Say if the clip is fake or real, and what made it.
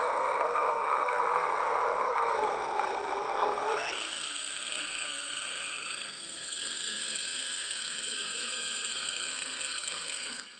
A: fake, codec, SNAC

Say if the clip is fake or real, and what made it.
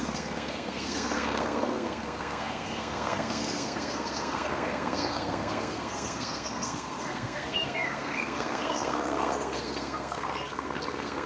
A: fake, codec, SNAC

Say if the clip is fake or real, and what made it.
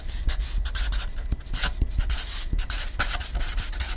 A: real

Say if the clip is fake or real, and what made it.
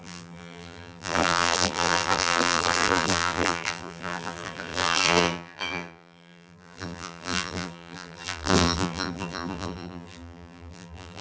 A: fake, vocoder, BigVGAN v2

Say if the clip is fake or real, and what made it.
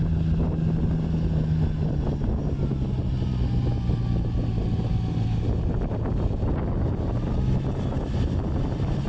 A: real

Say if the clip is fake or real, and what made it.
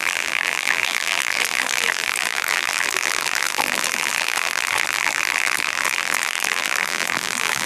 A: fake, vocoder, BigVGAN v2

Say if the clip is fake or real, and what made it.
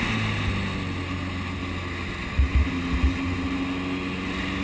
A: real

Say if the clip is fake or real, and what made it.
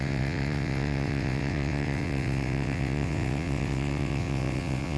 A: fake, vocoder, WaveNeXt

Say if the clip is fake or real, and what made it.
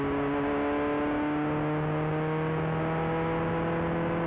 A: real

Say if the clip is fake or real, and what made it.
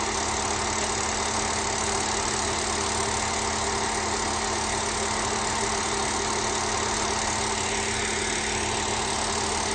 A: real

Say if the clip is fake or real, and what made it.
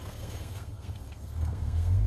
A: fake, codec, SNAC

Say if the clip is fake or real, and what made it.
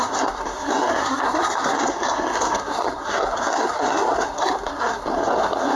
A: fake, codec, SNAC